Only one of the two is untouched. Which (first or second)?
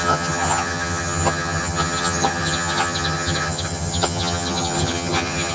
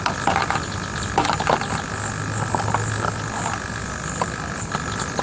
second